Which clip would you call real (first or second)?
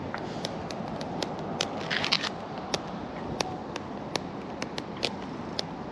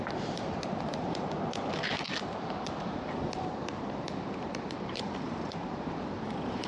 first